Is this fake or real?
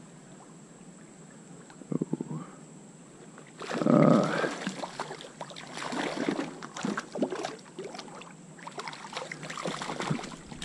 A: real